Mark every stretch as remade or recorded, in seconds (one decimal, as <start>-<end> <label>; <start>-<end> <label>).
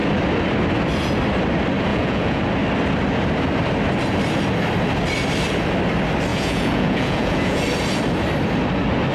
0.0-1.9 recorded; 1.9-2.4 remade; 2.4-6.3 recorded; 6.3-7.6 remade; 7.6-9.1 recorded